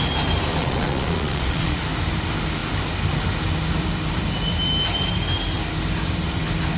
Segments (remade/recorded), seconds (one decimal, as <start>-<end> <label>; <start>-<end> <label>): 0.0-0.6 recorded; 0.6-1.8 remade; 1.8-6.8 recorded